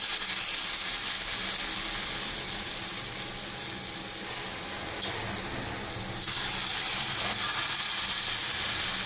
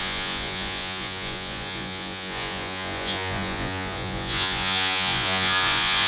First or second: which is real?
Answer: first